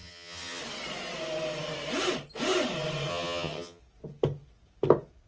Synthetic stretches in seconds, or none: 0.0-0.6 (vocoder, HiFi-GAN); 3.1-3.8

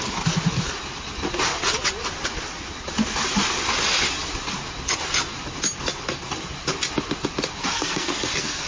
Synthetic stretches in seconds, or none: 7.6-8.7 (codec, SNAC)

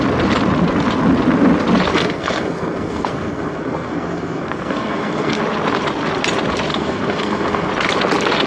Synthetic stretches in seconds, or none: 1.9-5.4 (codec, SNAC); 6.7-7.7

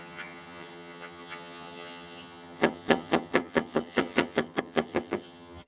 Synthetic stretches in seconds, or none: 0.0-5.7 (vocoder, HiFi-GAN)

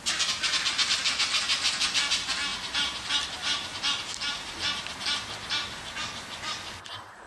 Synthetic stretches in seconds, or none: 2.5-3.1 (vocoder, BigVGAN v2)

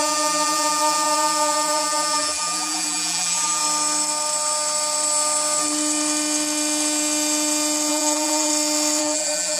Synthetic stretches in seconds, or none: 0.0-3.6 (vocoder, BigVGAN v2); 7.9-8.5; 9.0-9.6